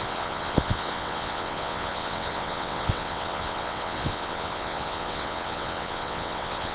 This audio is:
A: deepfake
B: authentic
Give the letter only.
A